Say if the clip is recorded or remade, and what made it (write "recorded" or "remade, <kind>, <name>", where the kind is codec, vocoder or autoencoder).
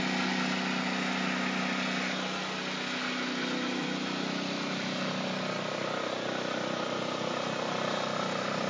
recorded